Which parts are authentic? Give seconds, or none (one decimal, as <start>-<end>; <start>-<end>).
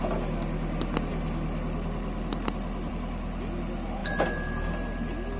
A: 0.0-5.4